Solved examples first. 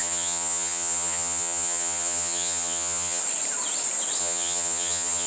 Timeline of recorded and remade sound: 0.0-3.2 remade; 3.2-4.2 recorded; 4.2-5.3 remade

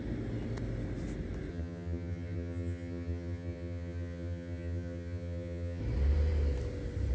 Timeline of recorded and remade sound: 0.0-1.5 recorded; 1.5-5.8 remade; 5.8-7.1 recorded